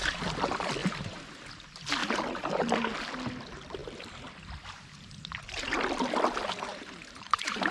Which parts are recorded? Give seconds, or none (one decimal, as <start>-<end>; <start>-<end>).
0.0-0.8; 1.3-2.0; 2.9-6.7